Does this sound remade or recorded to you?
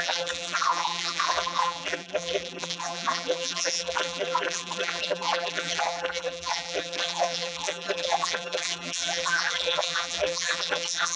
remade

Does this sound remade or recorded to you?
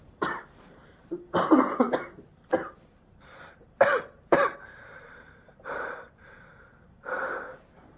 remade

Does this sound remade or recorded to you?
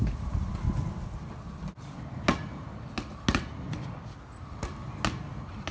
recorded